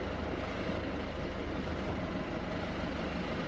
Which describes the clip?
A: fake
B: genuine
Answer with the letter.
B